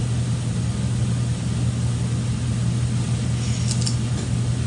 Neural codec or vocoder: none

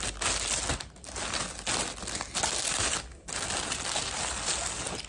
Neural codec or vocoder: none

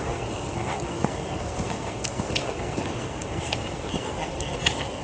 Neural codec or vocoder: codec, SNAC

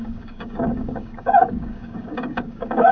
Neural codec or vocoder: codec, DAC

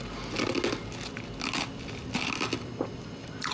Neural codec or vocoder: none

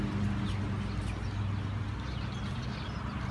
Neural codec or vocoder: none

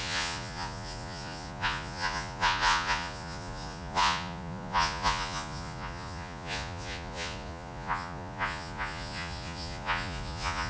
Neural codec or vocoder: vocoder, Vocos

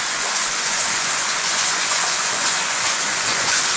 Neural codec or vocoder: vocoder, Vocos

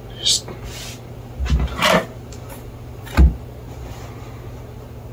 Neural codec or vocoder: none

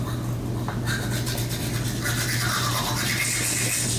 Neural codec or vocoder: none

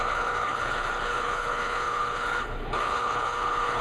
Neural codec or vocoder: codec, HILCodec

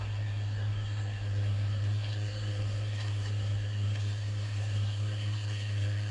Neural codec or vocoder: codec, SNAC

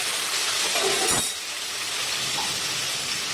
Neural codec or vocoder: none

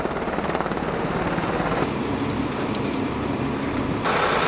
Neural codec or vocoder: none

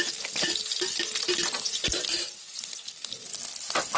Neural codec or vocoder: none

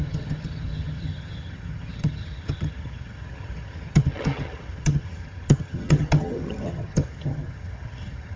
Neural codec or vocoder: vocoder, HiFi-GAN